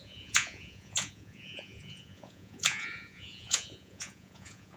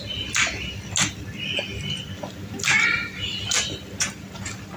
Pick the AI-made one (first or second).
first